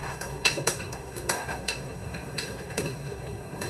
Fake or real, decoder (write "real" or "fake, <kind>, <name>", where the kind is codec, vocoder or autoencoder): fake, codec, SNAC